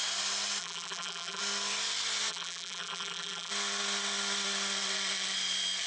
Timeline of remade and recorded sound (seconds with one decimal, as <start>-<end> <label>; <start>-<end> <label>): 0.0-0.6 recorded; 0.6-1.4 remade; 1.4-2.3 recorded; 2.3-3.5 remade; 3.5-5.9 recorded

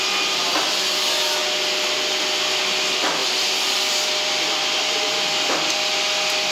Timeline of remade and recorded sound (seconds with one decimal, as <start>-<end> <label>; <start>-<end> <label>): 0.0-3.2 recorded; 3.2-4.2 remade; 4.2-6.5 recorded

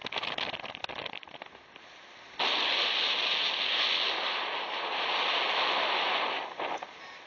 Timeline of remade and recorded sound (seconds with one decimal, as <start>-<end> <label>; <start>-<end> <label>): 0.0-7.3 recorded

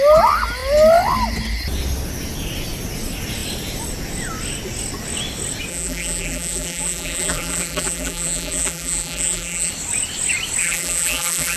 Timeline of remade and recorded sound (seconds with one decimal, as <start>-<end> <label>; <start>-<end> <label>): 0.0-5.7 recorded; 5.7-9.7 remade; 9.7-10.6 recorded; 10.6-11.6 remade

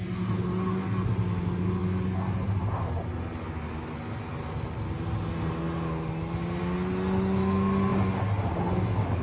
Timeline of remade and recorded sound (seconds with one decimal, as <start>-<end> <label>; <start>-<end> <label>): 0.0-9.2 recorded

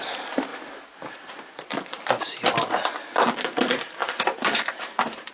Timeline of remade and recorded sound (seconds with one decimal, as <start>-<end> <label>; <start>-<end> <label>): 0.0-4.0 recorded; 4.0-5.3 remade

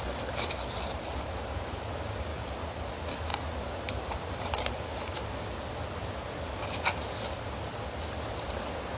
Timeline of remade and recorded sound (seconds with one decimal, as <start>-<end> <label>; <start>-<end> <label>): 0.0-2.3 recorded; 2.3-2.9 remade; 2.9-3.3 recorded; 3.3-5.1 remade; 5.1-9.0 recorded

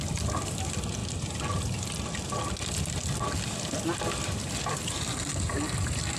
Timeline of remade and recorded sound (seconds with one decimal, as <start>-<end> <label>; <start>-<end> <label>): 0.0-1.0 remade; 1.0-4.7 recorded; 4.7-5.3 remade; 5.3-6.2 recorded